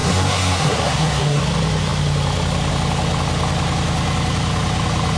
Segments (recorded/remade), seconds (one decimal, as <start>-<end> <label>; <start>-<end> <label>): 0.0-1.4 remade; 1.4-5.2 recorded